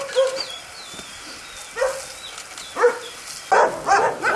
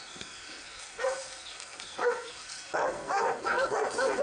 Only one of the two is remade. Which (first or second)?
second